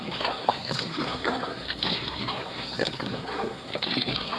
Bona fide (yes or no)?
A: no